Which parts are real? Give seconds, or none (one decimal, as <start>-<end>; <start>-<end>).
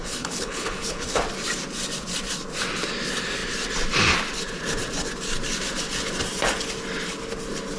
1.2-7.8